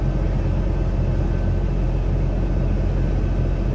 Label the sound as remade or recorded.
recorded